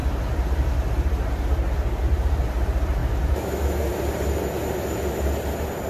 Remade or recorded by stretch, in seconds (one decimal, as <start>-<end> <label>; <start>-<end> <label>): 0.0-3.0 recorded; 3.0-3.9 remade; 3.9-5.9 recorded

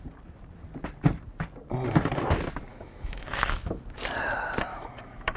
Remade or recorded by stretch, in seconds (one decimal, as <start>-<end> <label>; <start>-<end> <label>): 0.0-2.7 recorded; 2.7-3.8 remade; 3.8-4.7 recorded; 4.7-5.4 remade

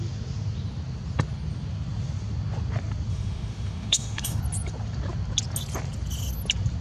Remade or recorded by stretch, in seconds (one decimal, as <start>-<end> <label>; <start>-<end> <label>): 0.0-3.1 recorded; 3.1-4.4 remade; 4.4-6.8 recorded

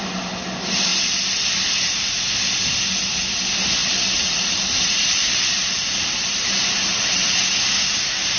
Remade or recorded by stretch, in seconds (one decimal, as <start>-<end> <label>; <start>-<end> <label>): 0.0-3.8 recorded; 3.8-7.2 remade; 7.2-8.4 recorded

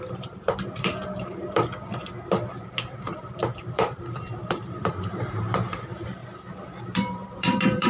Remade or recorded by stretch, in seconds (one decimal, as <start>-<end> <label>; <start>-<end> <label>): 0.0-1.7 remade; 1.7-2.9 recorded; 2.9-6.2 remade; 6.2-6.8 recorded; 6.8-7.9 remade